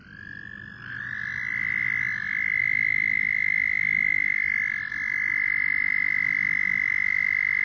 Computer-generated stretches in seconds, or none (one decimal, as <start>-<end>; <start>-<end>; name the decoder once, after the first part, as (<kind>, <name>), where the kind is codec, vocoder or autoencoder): none